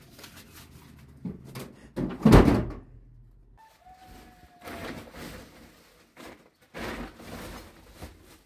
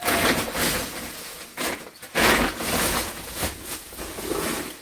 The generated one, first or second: second